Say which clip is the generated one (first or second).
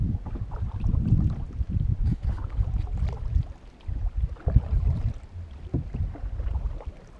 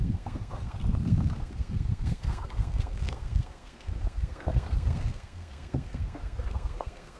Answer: second